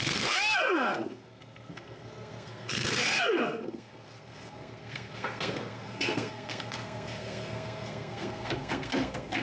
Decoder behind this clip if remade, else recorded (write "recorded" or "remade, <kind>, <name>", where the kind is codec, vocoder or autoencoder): remade, codec, SNAC